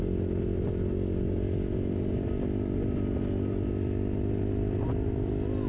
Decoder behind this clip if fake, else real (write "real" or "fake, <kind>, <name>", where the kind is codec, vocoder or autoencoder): real